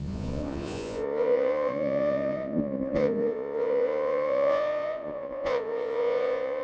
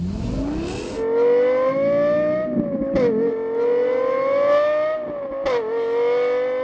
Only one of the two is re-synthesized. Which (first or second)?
first